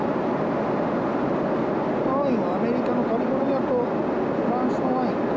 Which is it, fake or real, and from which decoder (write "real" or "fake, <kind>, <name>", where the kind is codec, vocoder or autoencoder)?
real